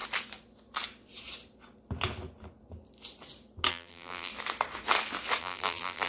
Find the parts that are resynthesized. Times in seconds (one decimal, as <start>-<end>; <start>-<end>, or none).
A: 3.7-4.3; 5.4-6.1